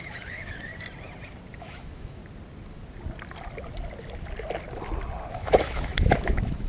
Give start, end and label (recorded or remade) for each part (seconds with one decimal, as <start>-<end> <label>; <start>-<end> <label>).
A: 0.0-0.7 remade; 0.7-1.6 recorded; 1.6-2.2 remade; 2.2-5.3 recorded; 5.3-6.7 remade